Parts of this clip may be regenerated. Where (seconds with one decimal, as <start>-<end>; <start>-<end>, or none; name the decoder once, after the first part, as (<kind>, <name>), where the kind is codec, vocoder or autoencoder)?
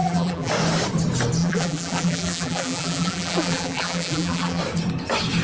0.0-0.5 (vocoder, BigVGAN v2); 1.4-4.6